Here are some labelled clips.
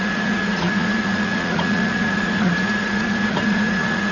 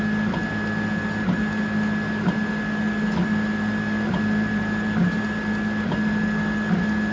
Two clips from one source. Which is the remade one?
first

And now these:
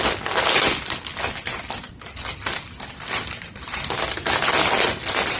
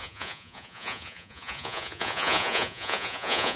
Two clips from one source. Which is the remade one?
second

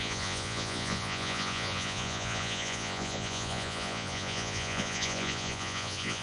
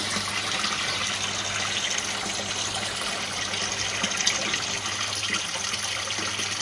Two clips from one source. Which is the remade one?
first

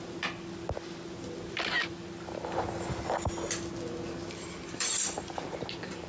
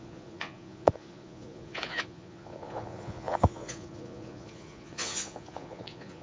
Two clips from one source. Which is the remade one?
second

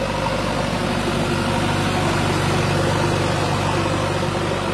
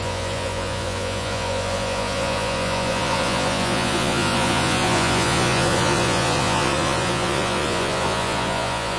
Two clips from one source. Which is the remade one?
second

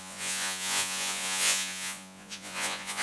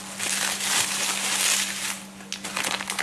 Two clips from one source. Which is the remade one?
first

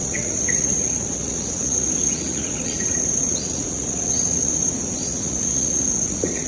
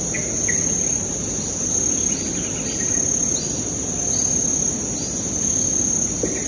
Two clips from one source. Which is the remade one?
first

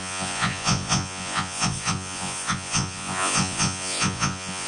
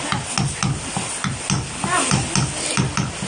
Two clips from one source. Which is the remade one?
first